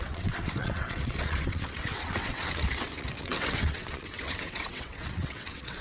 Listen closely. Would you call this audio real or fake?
fake